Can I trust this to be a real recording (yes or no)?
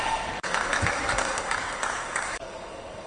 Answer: no